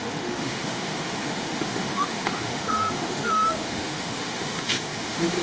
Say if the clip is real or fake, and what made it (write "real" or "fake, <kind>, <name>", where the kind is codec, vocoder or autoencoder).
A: fake, autoencoder, DAC-VAE